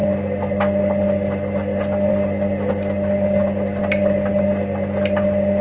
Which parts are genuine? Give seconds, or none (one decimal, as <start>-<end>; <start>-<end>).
0.0-5.6

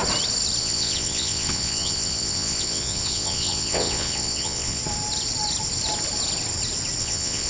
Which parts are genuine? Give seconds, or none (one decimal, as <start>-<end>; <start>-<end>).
0.0-0.6; 4.8-7.0

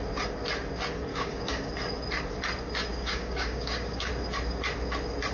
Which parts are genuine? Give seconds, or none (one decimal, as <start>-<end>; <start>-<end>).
0.0-1.1; 1.7-2.9; 4.1-5.3

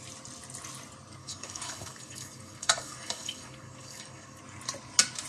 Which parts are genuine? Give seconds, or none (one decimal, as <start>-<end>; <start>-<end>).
0.0-1.2; 4.4-5.3